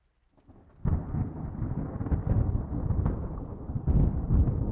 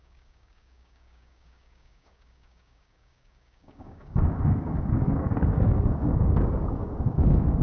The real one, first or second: first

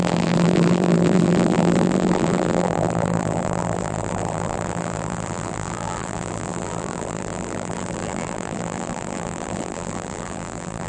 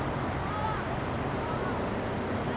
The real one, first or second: second